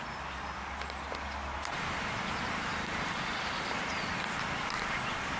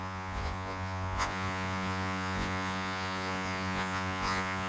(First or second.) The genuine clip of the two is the first